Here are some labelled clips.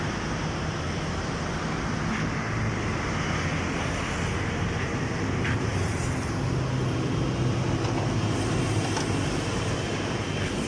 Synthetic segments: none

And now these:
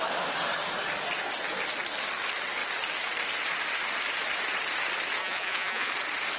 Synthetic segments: 5.2-5.9 (vocoder, Vocos)

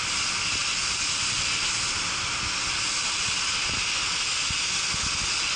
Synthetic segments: none

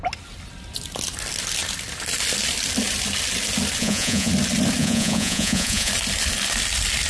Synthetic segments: 3.8-4.3 (vocoder, Vocos); 4.8-5.9